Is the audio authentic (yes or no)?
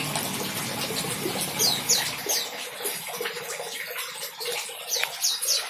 yes